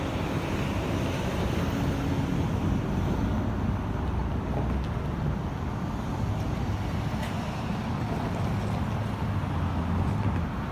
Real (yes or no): yes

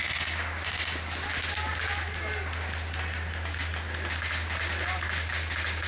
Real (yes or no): yes